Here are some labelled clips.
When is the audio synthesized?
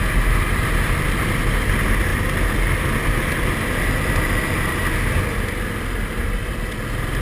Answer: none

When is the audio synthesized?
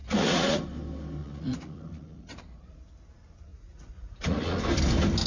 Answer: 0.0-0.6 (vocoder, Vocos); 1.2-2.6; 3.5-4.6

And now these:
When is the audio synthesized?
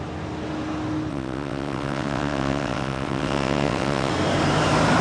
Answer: 1.1-4.1 (vocoder, WaveNeXt)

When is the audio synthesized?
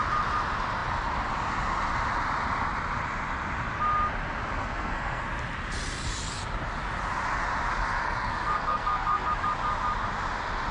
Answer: 4.6-5.2 (codec, SNAC); 7.8-9.3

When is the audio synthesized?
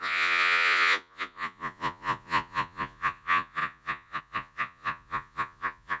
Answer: 0.0-6.0 (vocoder, Vocos)